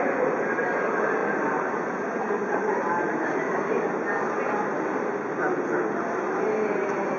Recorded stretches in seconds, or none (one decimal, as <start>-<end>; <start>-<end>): 0.0-7.2